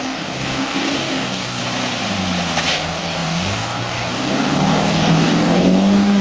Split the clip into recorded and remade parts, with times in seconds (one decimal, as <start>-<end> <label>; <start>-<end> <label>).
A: 0.0-1.6 remade; 1.6-2.7 recorded; 2.7-6.2 remade